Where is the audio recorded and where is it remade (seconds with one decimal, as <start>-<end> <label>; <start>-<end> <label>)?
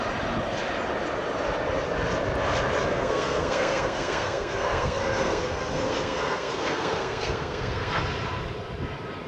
0.0-2.9 recorded; 2.9-8.0 remade; 8.0-9.3 recorded